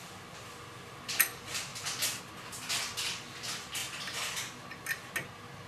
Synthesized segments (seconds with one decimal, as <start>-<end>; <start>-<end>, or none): none